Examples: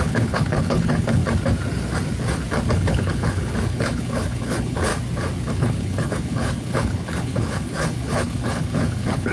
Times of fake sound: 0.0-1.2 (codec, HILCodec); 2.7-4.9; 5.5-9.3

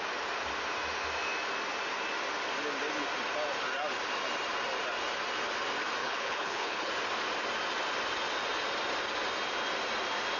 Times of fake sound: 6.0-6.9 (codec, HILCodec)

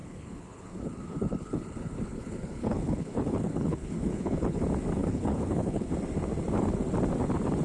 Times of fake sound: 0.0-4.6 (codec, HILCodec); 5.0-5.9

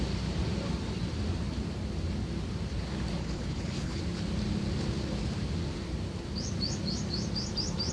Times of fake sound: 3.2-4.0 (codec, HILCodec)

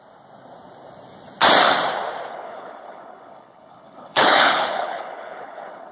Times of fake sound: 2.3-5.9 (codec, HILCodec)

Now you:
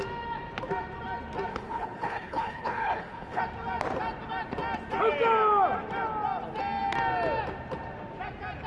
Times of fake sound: 1.5-3.4 (codec, HILCodec)

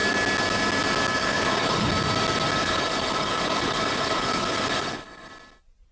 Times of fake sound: 1.2-1.9 (codec, HILCodec); 2.6-5.3